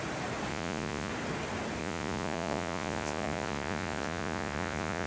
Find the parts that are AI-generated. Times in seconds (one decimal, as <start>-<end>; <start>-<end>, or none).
0.5-1.1; 1.8-5.1

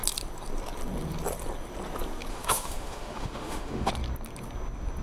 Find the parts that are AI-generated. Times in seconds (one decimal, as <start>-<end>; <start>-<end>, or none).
2.3-3.9

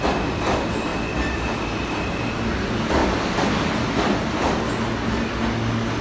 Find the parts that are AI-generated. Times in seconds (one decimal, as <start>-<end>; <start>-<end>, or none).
none

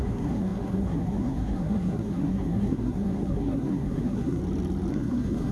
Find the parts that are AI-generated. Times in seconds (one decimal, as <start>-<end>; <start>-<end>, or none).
0.0-4.4; 4.9-5.5